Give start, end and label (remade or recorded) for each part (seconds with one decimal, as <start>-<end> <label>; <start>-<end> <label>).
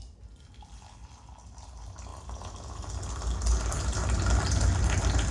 0.0-5.3 recorded